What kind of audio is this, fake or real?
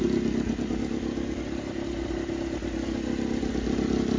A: real